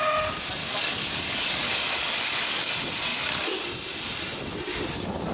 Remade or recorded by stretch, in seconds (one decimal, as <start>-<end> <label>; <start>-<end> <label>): 0.0-0.6 recorded; 0.6-2.7 remade; 2.7-3.1 recorded; 3.1-3.6 remade; 3.6-5.3 recorded

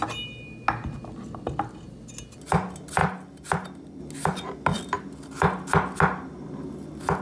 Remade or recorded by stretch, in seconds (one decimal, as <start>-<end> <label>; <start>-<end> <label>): 0.0-7.2 recorded

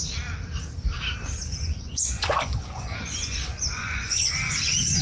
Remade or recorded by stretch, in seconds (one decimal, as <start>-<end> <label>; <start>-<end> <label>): 0.0-1.5 recorded; 1.5-4.5 remade; 4.5-5.0 recorded

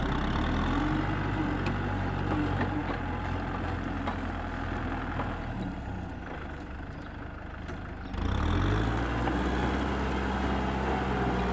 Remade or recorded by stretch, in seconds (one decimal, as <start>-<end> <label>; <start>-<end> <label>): 0.0-11.5 recorded

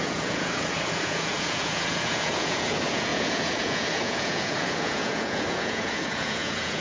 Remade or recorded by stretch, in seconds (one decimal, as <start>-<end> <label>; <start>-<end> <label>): 0.0-6.8 remade